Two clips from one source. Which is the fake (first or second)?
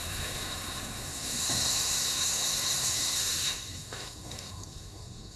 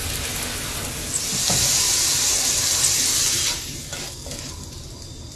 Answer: first